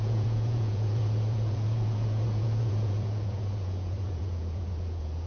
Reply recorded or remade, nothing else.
remade